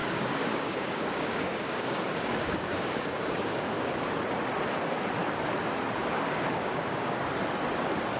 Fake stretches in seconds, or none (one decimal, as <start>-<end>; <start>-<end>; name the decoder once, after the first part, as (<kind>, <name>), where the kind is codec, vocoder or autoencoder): 0.0-4.1 (codec, DAC); 6.0-7.2